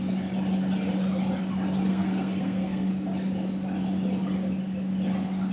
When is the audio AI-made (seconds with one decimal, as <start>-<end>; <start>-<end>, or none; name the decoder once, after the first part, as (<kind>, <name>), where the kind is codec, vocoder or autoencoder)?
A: 1.9-2.9 (codec, SNAC)